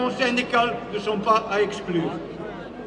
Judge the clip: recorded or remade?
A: recorded